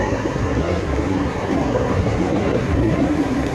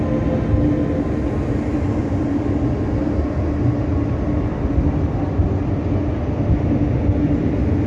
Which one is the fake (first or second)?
first